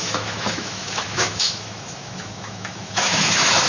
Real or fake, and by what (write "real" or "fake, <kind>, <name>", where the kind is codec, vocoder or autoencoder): fake, autoencoder, DAC-VAE